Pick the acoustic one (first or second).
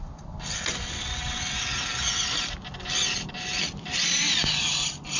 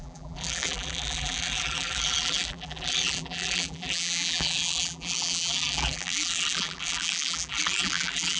first